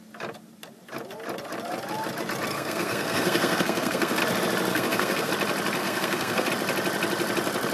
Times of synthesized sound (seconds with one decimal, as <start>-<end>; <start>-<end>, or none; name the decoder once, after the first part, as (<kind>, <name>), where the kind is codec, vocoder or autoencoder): 2.5-4.2 (codec, SNAC); 4.7-5.3; 5.8-6.5